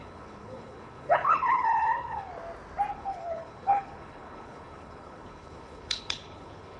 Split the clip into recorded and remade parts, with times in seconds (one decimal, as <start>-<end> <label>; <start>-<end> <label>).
0.0-2.3 remade; 2.3-2.9 recorded; 2.9-6.8 remade